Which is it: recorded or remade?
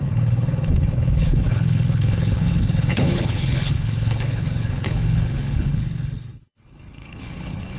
remade